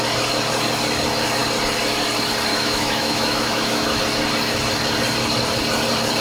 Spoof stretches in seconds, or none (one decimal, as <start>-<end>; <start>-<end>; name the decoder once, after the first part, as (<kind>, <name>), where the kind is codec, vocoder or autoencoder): 2.5-4.0 (autoencoder, DAC-VAE)